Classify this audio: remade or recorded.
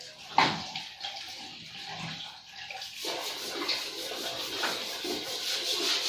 remade